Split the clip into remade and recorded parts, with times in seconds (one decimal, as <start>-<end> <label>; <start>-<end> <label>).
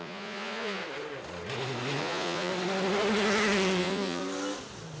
0.0-0.8 remade; 0.8-2.0 recorded; 2.0-2.5 remade; 2.5-3.8 recorded; 3.8-4.2 remade; 4.2-5.0 recorded